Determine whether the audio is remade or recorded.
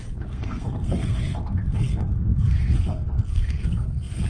remade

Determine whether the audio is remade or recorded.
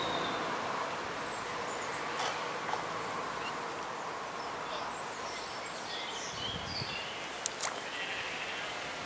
recorded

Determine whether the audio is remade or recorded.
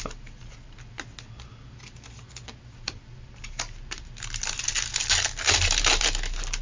recorded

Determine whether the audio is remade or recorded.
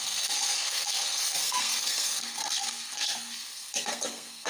remade